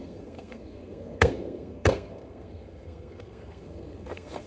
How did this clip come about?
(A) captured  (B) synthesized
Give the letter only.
B